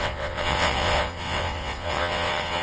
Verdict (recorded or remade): remade